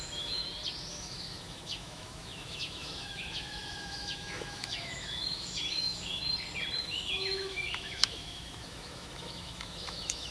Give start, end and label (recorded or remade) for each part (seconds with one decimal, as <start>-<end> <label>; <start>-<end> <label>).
0.0-0.4 remade; 0.4-0.9 recorded; 0.9-6.2 remade; 6.2-6.8 recorded; 6.8-10.3 remade